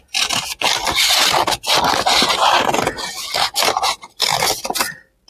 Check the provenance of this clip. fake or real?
real